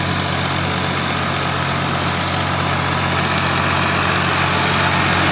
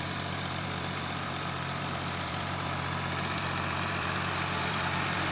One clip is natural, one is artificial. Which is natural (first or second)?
first